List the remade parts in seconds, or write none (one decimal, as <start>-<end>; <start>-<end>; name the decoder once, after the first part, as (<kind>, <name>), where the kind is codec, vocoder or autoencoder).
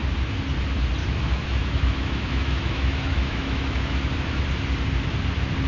1.0-4.4 (autoencoder, DAC-VAE)